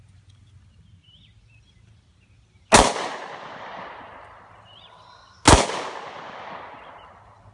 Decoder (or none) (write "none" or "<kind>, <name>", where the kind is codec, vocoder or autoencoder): none